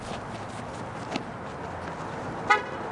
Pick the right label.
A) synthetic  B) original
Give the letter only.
B